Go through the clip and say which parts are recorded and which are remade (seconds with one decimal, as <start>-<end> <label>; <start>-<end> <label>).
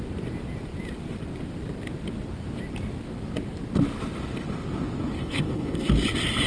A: 0.0-5.2 recorded; 5.2-5.9 remade; 5.9-6.5 recorded